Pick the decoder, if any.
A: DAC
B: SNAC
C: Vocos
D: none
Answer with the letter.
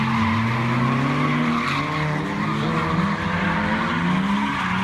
D